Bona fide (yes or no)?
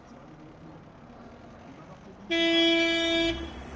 yes